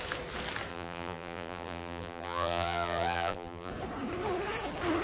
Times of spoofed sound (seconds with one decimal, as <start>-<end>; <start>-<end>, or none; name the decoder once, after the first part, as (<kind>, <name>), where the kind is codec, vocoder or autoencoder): 0.7-3.7 (vocoder, BigVGAN v2)

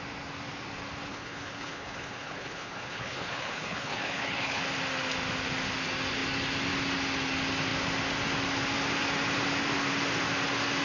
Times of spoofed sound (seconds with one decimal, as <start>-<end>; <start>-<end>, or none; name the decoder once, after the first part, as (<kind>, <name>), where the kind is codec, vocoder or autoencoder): 1.1-4.6 (codec, HILCodec)

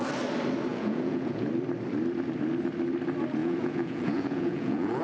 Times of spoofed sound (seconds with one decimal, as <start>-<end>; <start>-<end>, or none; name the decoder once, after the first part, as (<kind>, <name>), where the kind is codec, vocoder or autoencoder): 0.7-1.5 (vocoder, Vocos); 3.4-5.0

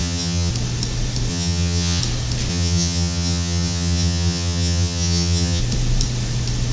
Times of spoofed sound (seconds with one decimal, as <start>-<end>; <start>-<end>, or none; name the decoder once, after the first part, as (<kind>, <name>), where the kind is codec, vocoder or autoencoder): 0.0-0.5 (vocoder, HiFi-GAN); 1.3-2.0; 2.5-5.6

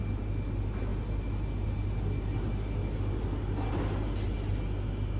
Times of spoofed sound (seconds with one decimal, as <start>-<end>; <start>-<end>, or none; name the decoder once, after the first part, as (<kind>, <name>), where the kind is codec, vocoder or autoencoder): none

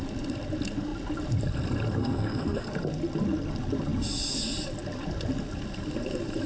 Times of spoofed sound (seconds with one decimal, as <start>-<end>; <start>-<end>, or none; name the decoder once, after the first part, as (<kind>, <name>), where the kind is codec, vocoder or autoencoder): 2.0-2.7 (codec, SNAC)

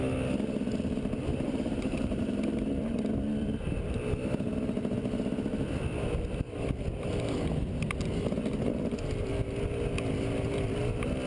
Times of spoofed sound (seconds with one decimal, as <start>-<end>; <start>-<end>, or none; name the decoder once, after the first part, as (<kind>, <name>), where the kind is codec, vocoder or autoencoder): 1.3-3.8 (vocoder, BigVGAN v2)

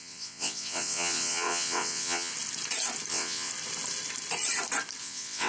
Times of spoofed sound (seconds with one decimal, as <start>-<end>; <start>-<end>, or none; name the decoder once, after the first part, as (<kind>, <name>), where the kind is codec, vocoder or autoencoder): 0.0-2.3 (vocoder, WaveNeXt); 3.1-3.5; 5.0-5.5